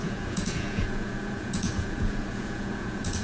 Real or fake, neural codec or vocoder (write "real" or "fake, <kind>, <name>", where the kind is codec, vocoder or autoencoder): fake, vocoder, Vocos